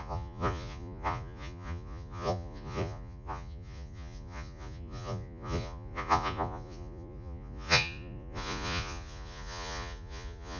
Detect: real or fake fake